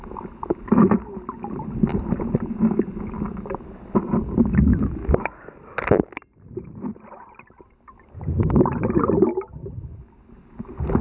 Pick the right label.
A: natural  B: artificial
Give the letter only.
A